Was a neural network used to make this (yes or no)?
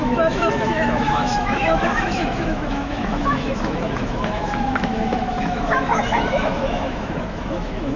yes